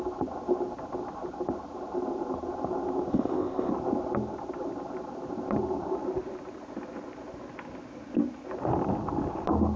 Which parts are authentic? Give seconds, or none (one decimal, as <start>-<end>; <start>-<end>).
0.0-3.1; 3.7-9.8

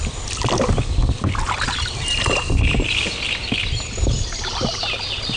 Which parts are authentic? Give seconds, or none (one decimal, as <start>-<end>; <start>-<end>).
0.0-5.4

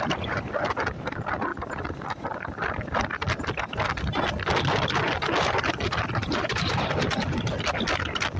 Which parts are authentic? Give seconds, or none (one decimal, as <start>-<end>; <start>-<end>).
0.0-6.2; 6.9-8.4

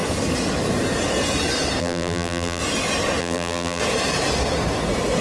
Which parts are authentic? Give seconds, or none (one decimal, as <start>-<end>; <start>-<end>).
0.0-1.8; 2.6-3.2; 3.8-5.2

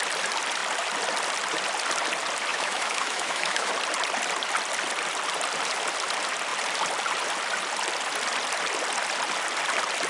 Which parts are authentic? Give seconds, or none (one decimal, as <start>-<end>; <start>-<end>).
0.0-2.5; 3.7-10.1

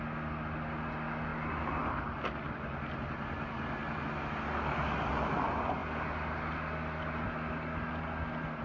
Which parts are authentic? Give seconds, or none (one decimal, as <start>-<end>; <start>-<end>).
0.0-8.6